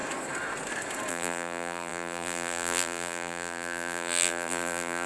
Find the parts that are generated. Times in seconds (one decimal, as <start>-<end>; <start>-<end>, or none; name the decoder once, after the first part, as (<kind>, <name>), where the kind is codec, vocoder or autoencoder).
1.1-5.1 (vocoder, BigVGAN v2)